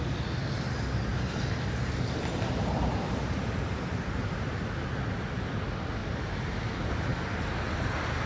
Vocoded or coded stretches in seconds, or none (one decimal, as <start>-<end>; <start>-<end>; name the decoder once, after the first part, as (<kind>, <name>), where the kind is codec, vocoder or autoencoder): 1.1-4.5 (vocoder, BigVGAN v2)